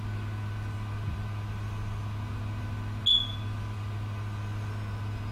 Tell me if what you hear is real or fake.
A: real